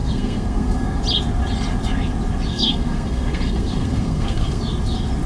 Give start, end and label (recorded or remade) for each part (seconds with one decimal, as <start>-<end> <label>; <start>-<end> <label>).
0.0-1.0 remade; 1.0-2.5 recorded; 2.5-4.6 remade; 4.6-5.3 recorded